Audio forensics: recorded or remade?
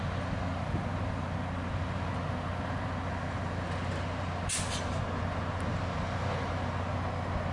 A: recorded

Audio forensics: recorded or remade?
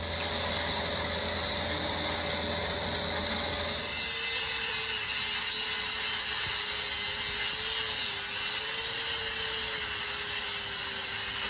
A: recorded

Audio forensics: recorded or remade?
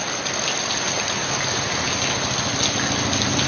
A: recorded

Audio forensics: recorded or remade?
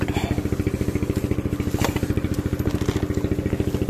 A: recorded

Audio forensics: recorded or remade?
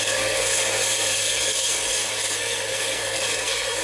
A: remade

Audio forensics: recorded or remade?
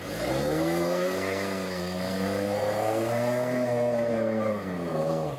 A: remade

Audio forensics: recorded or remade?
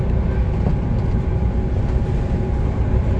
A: recorded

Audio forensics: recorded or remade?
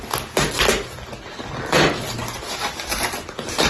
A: recorded